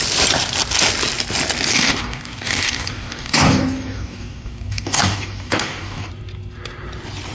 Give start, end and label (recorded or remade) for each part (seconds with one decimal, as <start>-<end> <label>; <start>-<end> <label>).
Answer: 0.0-1.7 recorded; 1.7-6.1 remade; 6.1-7.3 recorded